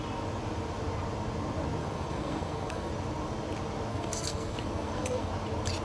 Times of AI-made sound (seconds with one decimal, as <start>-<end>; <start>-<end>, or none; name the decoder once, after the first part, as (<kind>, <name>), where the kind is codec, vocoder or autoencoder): 1.8-2.9 (codec, SNAC); 3.9-5.3